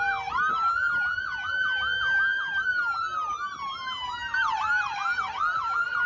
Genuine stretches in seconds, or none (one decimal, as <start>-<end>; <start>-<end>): 0.0-6.1